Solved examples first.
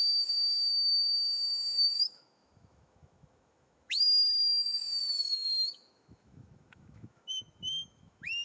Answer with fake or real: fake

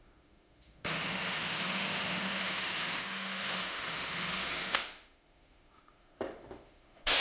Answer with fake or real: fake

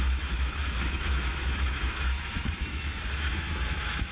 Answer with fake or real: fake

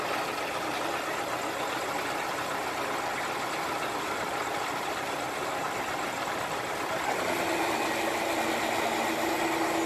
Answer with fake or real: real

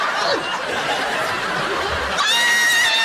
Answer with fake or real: real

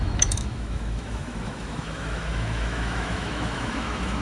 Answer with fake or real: fake